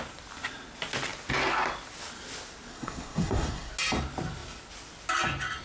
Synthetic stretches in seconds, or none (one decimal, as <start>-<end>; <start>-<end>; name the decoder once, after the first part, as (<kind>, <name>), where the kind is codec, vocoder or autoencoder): 2.7-3.7 (codec, SNAC)